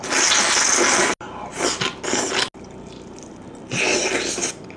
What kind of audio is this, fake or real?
real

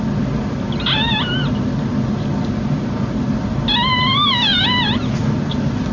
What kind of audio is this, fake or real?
real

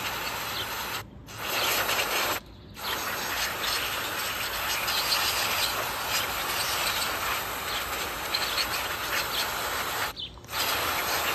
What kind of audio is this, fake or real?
real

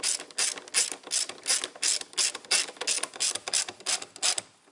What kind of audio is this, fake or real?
real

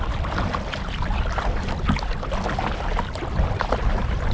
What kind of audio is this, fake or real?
real